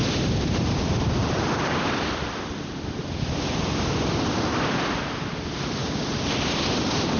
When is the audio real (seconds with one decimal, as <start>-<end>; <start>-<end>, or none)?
0.0-7.2